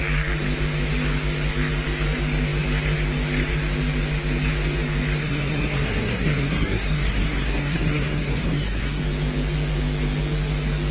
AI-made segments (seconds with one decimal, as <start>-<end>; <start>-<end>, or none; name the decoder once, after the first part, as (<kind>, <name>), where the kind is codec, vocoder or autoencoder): 5.2-9.0 (codec, SNAC)